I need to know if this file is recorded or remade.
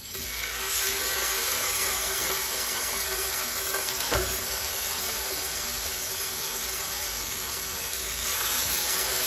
remade